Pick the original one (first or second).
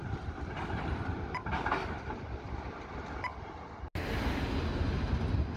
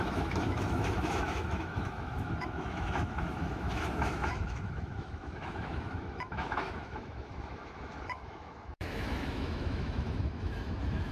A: first